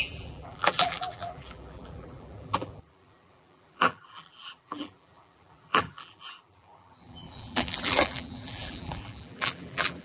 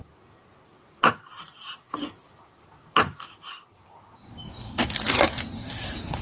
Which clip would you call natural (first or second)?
second